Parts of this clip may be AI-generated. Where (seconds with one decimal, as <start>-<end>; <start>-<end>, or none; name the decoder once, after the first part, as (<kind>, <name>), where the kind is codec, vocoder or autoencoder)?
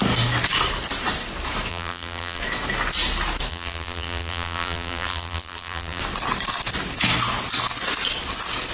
1.7-2.4 (vocoder, BigVGAN v2); 3.5-6.0